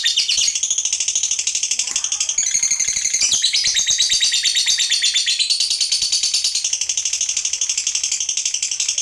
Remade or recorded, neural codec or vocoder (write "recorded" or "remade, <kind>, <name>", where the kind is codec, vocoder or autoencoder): recorded